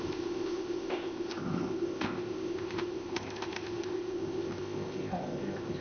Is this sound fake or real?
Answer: fake